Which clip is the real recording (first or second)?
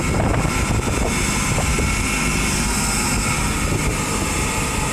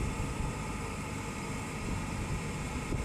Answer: first